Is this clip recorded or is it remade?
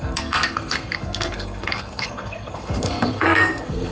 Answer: remade